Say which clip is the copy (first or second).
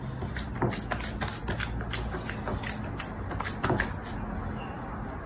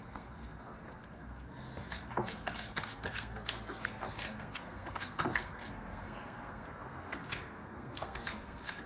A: second